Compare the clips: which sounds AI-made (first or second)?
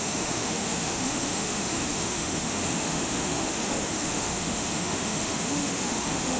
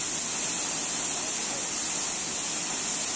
first